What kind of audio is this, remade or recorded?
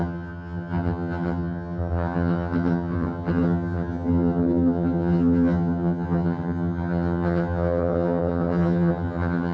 remade